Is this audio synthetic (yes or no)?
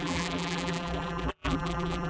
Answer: yes